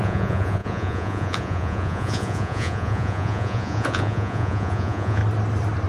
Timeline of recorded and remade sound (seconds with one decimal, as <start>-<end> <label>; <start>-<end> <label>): 0.0-5.2 remade; 5.2-5.9 recorded